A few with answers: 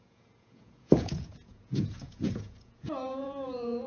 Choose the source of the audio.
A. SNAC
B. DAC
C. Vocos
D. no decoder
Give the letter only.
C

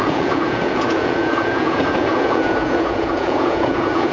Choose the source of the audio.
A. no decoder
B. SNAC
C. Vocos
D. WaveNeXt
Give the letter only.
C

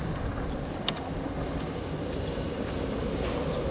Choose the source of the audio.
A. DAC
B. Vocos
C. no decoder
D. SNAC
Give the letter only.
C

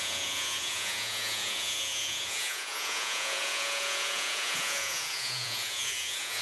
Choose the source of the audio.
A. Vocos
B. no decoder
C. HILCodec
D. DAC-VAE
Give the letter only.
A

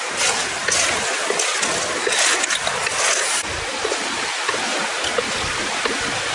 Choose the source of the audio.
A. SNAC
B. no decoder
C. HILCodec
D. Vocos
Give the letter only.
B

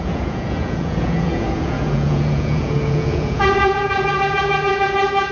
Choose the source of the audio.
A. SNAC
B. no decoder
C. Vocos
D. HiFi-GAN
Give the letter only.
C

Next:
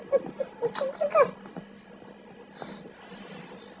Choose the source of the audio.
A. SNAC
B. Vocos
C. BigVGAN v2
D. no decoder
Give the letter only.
D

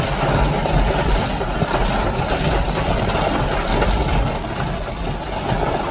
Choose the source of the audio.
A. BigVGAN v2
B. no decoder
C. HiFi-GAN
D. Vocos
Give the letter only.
B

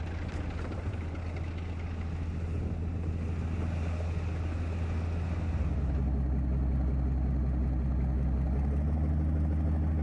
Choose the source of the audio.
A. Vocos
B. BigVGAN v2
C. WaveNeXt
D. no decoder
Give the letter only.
D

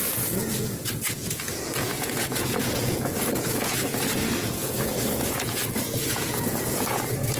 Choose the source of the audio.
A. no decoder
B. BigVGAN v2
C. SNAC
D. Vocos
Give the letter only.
D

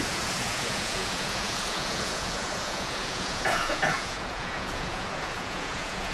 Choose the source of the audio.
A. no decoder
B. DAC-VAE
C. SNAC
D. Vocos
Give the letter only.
D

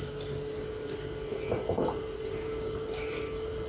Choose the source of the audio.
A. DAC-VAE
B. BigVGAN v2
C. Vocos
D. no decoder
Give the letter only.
D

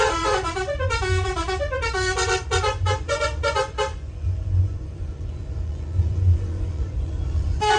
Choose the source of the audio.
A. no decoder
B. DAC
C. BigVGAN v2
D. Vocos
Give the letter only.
D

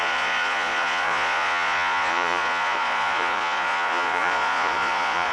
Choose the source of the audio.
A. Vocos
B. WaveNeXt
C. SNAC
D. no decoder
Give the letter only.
A